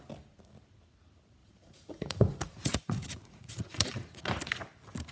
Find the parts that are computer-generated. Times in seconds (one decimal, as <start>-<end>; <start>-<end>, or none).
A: 1.4-4.4